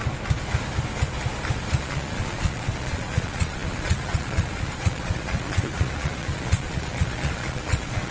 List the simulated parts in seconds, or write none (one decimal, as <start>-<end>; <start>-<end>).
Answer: 1.8-8.1